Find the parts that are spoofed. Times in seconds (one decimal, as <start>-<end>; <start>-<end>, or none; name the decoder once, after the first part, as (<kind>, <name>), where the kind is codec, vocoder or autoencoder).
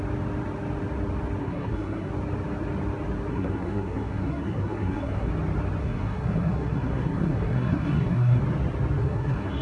1.4-2.1 (codec, SNAC); 3.3-5.3; 5.8-8.4; 9.0-9.6